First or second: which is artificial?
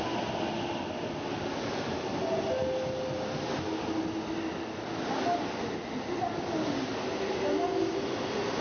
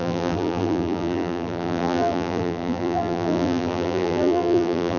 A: second